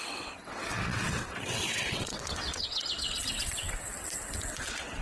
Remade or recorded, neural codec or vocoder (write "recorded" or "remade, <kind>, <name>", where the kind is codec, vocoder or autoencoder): remade, vocoder, WaveNeXt